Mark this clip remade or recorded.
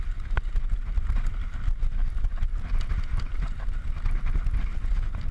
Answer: recorded